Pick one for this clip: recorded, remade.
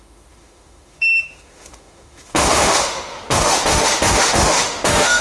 remade